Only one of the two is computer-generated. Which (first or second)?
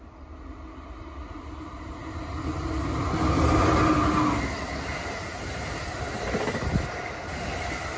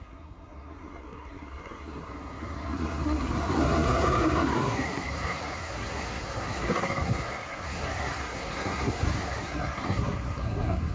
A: second